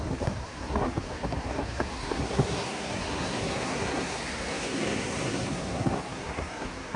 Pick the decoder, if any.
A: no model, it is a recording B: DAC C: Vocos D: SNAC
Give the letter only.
D